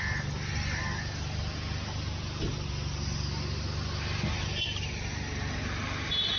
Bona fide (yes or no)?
yes